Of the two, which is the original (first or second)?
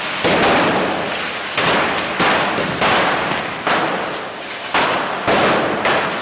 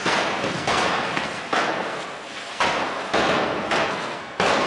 first